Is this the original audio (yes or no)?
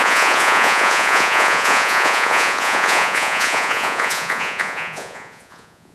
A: no